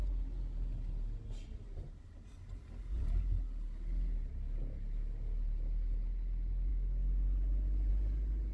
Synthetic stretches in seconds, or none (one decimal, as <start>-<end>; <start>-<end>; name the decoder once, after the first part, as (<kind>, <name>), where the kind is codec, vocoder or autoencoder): none